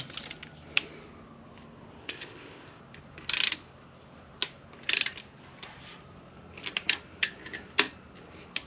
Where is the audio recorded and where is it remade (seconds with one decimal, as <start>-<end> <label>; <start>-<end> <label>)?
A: 0.0-2.0 recorded; 2.0-2.8 remade; 2.8-8.7 recorded